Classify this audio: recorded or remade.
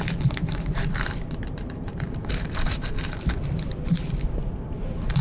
remade